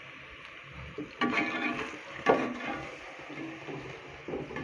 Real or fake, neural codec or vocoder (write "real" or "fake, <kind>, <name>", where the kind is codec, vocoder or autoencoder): real